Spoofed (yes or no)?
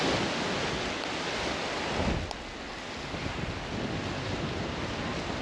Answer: no